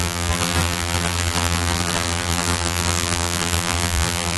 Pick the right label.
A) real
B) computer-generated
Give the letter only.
B